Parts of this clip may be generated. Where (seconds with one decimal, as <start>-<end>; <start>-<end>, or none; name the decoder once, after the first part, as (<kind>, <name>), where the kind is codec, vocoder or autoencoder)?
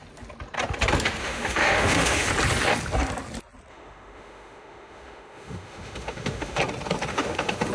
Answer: 1.2-2.3 (autoencoder, DAC-VAE); 3.7-6.6; 7.1-7.7